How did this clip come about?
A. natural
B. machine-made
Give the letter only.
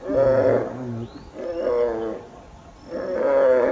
A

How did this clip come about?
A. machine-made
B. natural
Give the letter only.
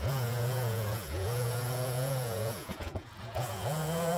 A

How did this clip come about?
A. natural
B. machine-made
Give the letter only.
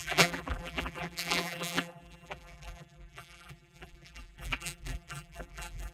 B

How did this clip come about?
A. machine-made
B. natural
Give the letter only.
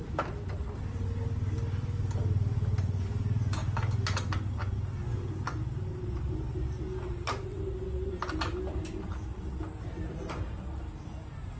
B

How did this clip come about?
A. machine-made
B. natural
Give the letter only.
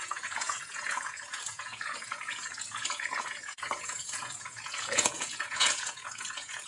A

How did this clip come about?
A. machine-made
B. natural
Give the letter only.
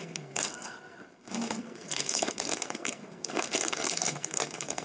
A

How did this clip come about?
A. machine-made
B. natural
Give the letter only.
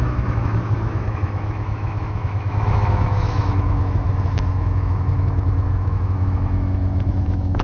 A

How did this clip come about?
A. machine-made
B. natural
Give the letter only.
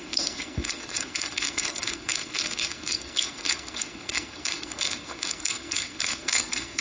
A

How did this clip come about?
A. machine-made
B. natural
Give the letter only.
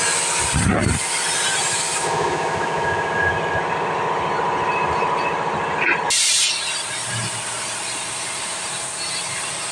B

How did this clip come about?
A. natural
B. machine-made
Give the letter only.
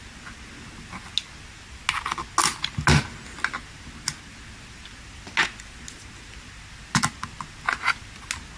A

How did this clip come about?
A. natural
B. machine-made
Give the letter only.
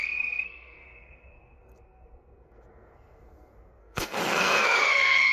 B